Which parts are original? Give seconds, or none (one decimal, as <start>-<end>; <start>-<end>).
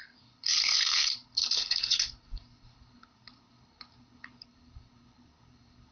none